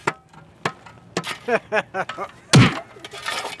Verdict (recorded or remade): recorded